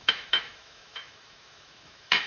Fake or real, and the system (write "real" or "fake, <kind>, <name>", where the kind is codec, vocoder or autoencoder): fake, autoencoder, DAC-VAE